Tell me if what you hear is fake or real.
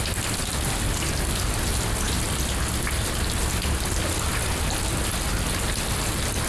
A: real